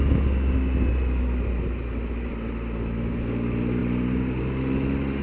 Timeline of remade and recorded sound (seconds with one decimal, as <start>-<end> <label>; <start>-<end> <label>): 0.0-5.2 recorded